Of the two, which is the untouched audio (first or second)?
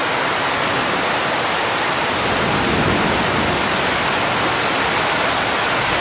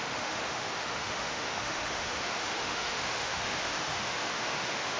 first